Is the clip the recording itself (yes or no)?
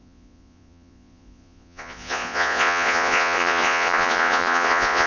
no